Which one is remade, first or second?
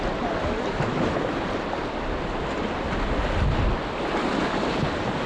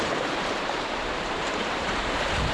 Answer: second